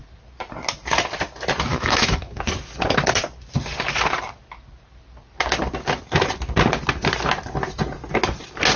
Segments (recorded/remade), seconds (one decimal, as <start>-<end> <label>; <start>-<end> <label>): 0.0-1.7 recorded; 1.7-2.4 remade; 2.4-8.8 recorded